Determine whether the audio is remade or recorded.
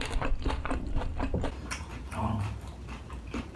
remade